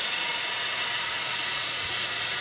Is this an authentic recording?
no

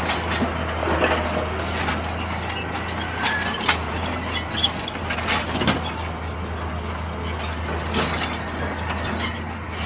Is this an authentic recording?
yes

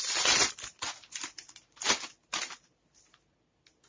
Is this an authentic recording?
yes